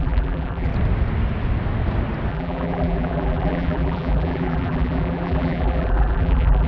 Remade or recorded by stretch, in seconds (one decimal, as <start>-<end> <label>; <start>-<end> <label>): 0.0-0.7 remade; 0.7-2.3 recorded; 2.3-6.7 remade